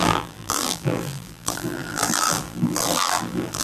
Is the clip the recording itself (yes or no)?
no